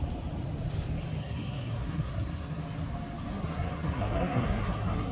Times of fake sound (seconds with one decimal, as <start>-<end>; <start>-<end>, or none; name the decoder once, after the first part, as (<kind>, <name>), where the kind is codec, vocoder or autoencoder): 1.2-2.6 (codec, SNAC); 3.3-5.1